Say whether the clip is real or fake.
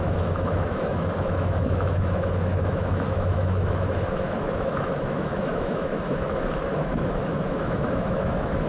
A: fake